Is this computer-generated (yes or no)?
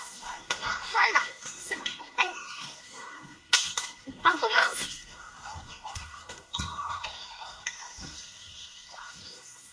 yes